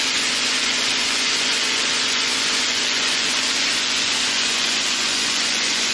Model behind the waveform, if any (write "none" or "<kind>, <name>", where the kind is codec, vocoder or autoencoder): vocoder, Vocos